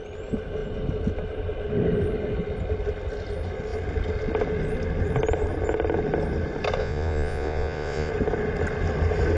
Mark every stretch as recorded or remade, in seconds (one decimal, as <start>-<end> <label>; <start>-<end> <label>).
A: 0.0-6.8 recorded; 6.8-8.1 remade; 8.1-9.4 recorded